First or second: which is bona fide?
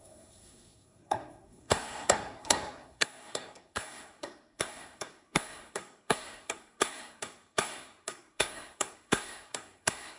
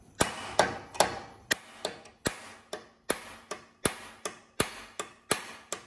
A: second